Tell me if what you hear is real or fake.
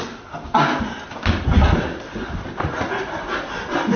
real